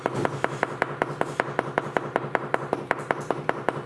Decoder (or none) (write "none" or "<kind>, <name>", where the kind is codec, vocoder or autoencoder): none